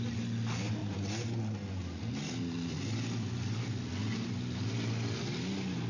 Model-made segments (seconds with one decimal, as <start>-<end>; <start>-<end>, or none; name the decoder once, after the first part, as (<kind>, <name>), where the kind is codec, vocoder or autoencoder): none